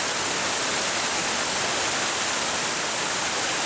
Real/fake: real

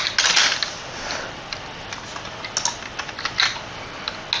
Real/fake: real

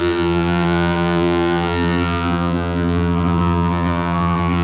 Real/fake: fake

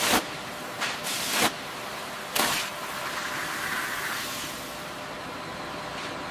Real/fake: fake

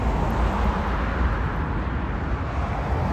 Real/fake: real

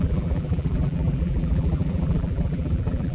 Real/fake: fake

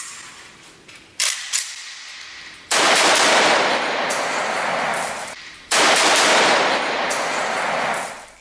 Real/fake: fake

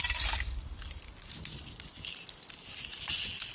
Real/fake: real